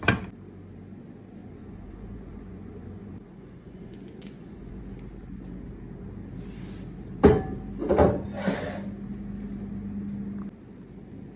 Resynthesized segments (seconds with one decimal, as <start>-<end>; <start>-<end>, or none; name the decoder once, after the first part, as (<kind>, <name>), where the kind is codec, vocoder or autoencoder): 1.4-4.8 (vocoder, Vocos)